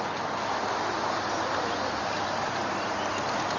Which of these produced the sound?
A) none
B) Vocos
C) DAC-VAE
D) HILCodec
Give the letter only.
A